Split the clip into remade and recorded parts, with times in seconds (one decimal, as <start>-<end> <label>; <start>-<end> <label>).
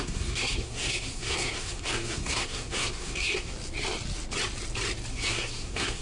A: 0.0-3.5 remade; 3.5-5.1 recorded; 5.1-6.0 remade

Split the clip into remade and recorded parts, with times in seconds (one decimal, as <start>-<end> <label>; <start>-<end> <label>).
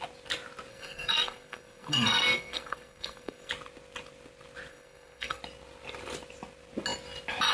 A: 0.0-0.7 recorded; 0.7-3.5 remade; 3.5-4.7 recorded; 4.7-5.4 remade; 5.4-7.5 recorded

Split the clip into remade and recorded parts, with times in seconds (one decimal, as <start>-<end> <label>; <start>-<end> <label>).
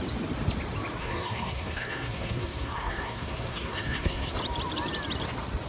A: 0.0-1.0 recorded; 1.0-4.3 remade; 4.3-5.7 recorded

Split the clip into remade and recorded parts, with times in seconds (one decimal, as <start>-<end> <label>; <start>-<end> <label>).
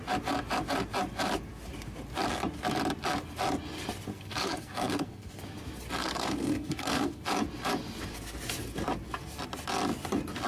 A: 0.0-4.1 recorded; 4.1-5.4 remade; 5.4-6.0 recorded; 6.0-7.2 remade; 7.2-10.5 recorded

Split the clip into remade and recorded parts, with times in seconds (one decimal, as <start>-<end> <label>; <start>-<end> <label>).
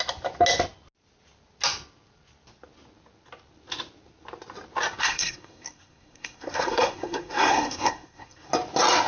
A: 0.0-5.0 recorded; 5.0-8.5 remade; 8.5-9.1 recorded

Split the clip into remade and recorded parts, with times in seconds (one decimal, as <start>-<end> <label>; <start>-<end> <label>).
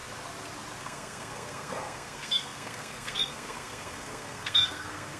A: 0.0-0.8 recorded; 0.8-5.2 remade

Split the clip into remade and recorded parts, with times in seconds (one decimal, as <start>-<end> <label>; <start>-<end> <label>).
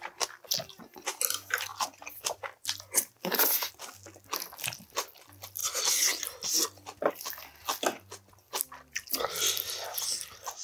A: 0.0-10.6 recorded